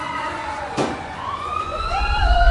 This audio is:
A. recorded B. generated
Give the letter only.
B